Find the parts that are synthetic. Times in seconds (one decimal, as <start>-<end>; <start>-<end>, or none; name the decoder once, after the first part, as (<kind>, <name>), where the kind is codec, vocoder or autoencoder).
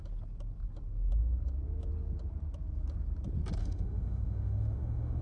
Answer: 3.6-5.2 (autoencoder, DAC-VAE)